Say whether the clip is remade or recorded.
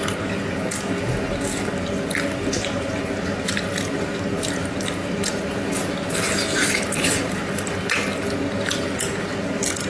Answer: recorded